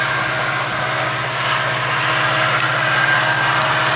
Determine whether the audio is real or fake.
real